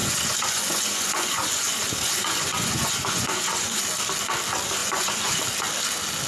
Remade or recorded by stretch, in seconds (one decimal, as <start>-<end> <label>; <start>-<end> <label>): 0.0-3.8 remade; 3.8-4.8 recorded; 4.8-5.4 remade; 5.4-6.3 recorded